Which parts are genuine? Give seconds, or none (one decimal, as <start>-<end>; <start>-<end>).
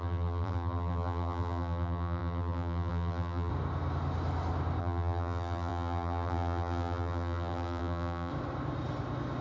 3.5-4.8; 8.3-9.4